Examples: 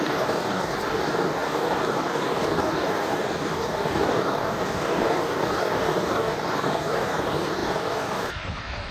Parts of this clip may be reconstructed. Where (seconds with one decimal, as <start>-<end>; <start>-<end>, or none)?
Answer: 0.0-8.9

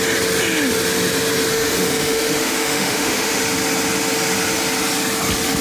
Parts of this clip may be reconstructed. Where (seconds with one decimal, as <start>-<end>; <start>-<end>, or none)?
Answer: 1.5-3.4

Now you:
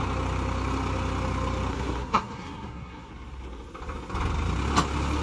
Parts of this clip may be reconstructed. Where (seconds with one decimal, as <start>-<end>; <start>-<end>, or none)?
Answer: 1.7-3.1